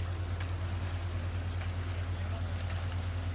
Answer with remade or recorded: recorded